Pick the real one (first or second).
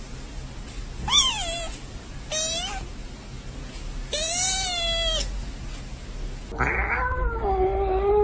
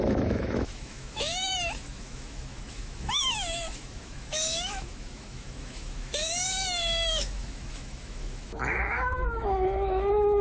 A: first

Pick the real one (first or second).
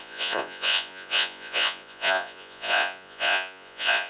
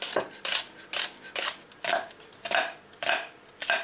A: second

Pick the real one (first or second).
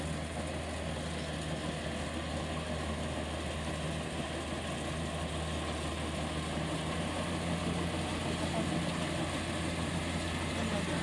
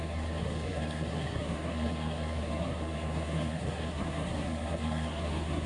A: first